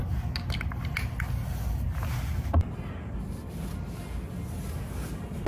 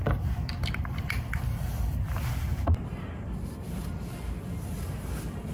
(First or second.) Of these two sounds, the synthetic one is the second